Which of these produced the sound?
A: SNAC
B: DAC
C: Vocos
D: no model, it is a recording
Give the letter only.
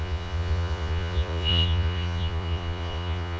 C